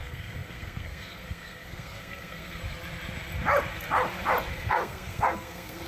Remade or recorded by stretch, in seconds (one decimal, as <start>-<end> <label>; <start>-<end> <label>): 0.0-2.6 remade; 2.6-4.5 recorded; 4.5-5.9 remade